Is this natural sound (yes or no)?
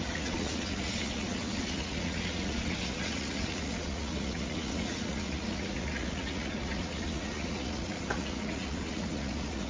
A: no